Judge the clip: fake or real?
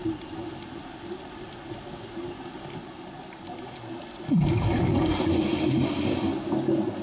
real